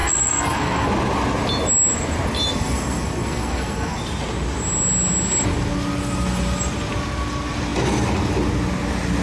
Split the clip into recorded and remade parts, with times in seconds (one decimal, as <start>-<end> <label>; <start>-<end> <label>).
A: 0.0-0.9 remade; 0.9-2.5 recorded; 2.5-4.0 remade; 4.0-9.2 recorded